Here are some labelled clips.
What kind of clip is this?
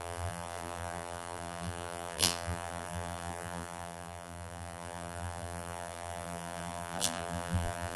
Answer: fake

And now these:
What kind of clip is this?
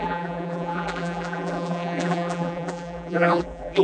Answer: fake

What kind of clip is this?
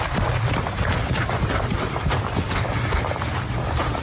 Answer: fake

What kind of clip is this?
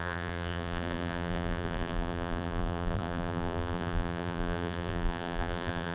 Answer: fake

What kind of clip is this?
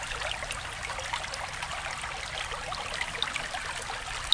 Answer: real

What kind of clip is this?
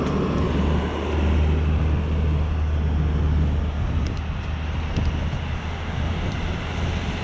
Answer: real